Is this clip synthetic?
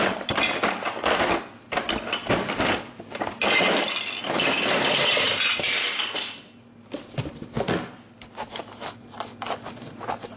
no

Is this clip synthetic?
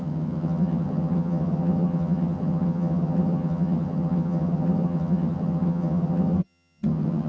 yes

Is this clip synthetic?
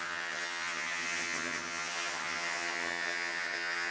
yes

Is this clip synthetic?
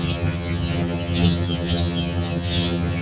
yes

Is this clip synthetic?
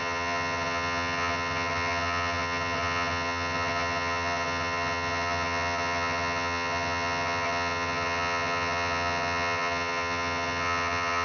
yes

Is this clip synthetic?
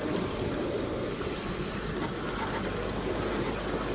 no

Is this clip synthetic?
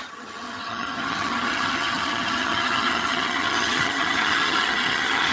yes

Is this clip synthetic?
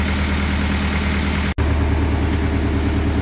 no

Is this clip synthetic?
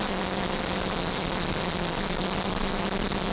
no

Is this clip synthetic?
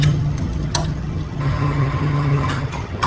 yes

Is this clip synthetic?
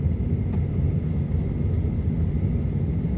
no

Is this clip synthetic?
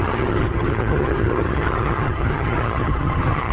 yes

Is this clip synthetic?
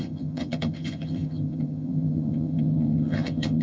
yes